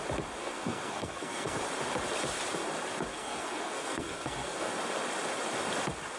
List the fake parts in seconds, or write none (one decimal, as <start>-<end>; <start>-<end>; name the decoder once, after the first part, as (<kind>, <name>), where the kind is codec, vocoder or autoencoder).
0.4-1.6 (codec, SNAC); 3.1-4.7